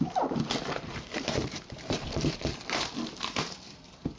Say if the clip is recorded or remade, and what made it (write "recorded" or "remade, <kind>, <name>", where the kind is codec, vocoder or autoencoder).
remade, vocoder, BigVGAN v2